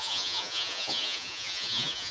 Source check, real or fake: fake